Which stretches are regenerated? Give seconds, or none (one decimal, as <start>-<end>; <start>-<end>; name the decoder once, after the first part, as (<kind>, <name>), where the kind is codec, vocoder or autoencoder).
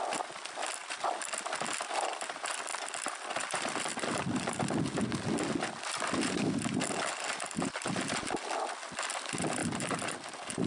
2.7-4.6 (vocoder, BigVGAN v2); 9.6-10.7